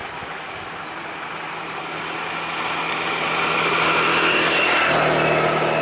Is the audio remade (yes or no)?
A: no